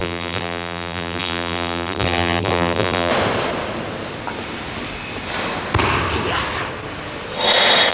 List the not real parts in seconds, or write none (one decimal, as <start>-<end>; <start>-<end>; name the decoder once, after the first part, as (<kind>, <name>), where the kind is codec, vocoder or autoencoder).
0.0-3.1 (vocoder, BigVGAN v2)